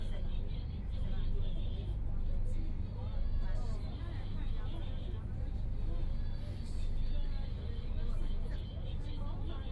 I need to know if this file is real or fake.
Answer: real